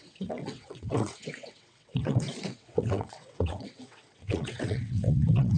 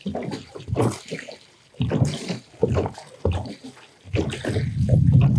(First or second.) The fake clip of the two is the first